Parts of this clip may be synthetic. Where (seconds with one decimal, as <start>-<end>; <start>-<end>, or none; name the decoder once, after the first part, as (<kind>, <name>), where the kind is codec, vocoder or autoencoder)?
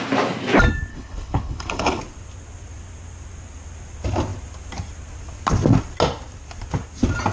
0.9-2.0 (codec, HILCodec)